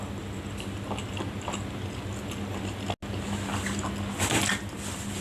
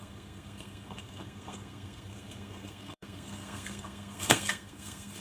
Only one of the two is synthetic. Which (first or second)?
second